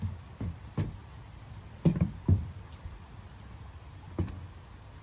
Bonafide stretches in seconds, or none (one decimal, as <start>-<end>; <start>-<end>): 0.0-1.0; 3.2-5.0